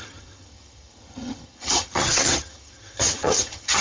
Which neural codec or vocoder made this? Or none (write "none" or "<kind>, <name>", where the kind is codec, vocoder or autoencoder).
vocoder, HiFi-GAN